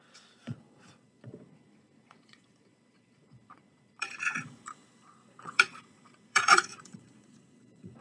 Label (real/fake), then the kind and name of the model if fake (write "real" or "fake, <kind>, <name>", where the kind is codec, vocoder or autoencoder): fake, vocoder, Vocos